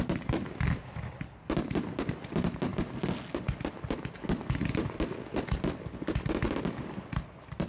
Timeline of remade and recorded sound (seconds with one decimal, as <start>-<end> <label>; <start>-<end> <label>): 0.0-7.7 recorded